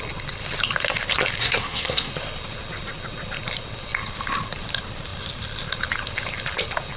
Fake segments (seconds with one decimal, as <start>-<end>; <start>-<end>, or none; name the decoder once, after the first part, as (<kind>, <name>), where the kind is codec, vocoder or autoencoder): 1.4-2.1 (codec, SNAC)